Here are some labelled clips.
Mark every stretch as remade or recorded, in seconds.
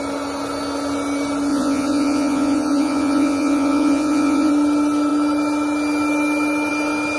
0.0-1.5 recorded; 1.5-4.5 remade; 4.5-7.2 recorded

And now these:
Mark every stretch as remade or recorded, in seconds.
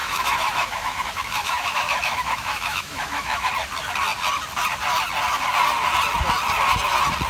0.0-3.5 remade; 3.5-7.3 recorded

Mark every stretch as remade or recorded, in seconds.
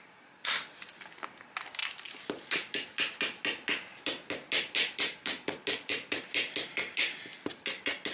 0.0-8.1 recorded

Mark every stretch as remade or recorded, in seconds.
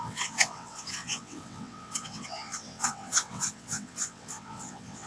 0.0-5.1 remade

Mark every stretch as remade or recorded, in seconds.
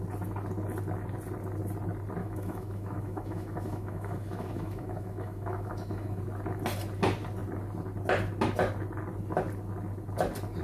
0.0-2.2 recorded; 2.2-6.2 remade; 6.2-10.6 recorded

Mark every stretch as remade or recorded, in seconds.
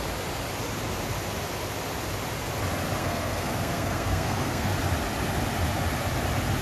0.0-3.0 recorded; 3.0-4.7 remade; 4.7-6.6 recorded